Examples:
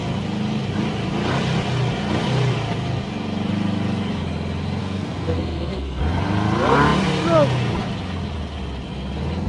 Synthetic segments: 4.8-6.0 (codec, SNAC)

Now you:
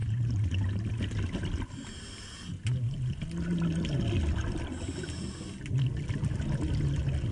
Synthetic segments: none

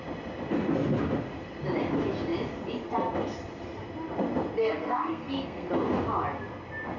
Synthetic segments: 4.6-5.7 (codec, SNAC)

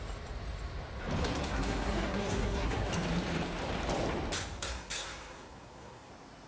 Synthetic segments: 1.2-2.9 (codec, SNAC); 4.6-6.1

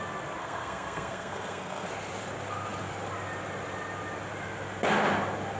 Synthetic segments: 0.4-1.9 (codec, SNAC)

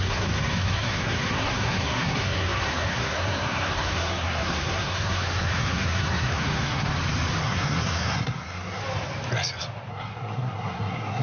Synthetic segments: 0.0-6.9 (codec, SNAC); 7.4-8.8; 9.9-11.2

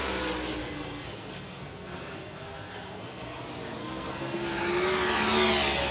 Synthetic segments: 0.6-3.4 (codec, SNAC); 3.8-4.4

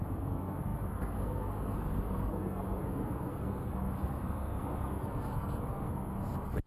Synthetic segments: 0.0-6.7 (codec, SNAC)